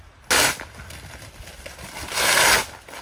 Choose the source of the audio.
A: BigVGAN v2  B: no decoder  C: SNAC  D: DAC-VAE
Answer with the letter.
B